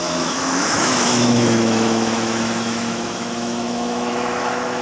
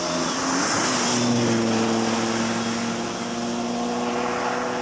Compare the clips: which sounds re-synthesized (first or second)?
first